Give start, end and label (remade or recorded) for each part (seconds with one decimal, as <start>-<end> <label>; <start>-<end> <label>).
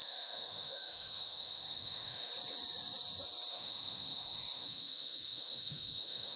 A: 0.0-2.3 remade; 2.3-3.5 recorded; 3.5-6.4 remade